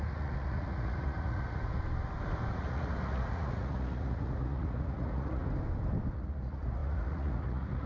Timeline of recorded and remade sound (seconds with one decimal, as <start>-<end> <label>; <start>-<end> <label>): 0.0-1.6 remade; 1.6-2.5 recorded; 2.5-5.4 remade; 5.4-6.1 recorded; 6.1-7.9 remade